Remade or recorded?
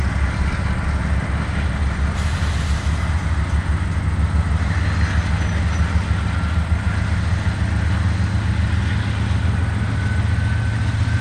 recorded